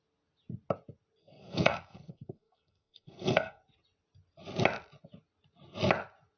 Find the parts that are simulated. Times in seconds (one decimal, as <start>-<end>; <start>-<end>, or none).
1.2-3.6